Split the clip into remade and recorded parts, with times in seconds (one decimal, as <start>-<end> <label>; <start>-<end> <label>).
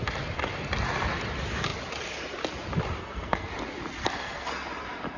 0.0-3.0 recorded; 3.0-3.5 remade; 3.5-4.0 recorded; 4.0-4.5 remade; 4.5-5.2 recorded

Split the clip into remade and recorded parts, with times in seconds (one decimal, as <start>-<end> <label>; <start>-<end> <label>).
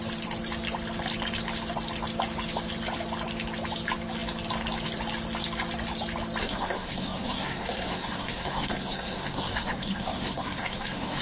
0.0-6.4 recorded; 6.4-11.2 remade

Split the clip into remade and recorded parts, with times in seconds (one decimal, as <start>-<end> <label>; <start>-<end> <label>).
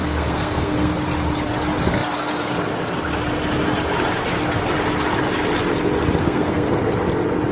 0.0-0.9 remade; 0.9-6.2 recorded; 6.2-6.8 remade; 6.8-7.5 recorded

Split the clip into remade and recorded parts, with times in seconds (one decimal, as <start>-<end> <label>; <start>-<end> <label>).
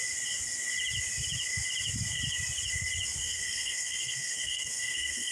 0.0-3.2 recorded; 3.2-5.3 remade